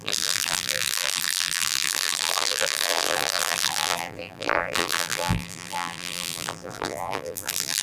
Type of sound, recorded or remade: remade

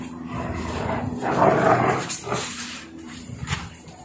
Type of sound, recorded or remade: remade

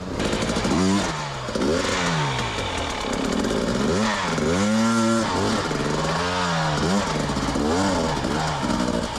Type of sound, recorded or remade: recorded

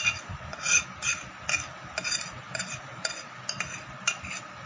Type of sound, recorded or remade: recorded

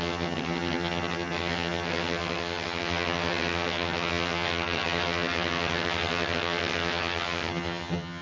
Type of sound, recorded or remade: remade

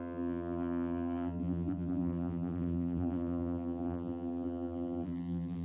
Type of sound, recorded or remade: remade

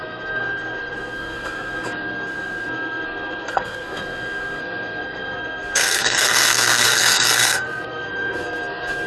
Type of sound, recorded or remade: remade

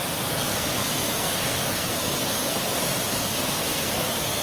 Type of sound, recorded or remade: remade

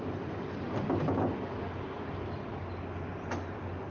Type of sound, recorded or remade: recorded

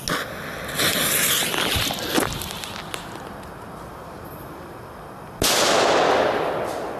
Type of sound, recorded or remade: recorded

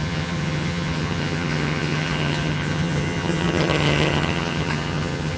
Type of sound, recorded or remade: remade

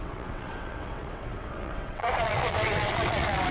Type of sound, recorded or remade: remade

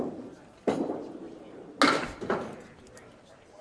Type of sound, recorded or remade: recorded